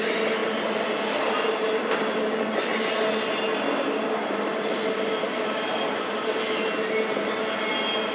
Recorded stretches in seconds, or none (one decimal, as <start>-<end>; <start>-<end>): 0.0-8.1